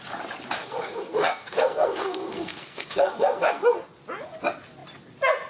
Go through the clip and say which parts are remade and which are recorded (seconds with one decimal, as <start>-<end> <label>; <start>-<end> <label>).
0.0-0.6 recorded; 0.6-3.9 remade; 3.9-5.5 recorded